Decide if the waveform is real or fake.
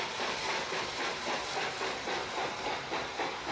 real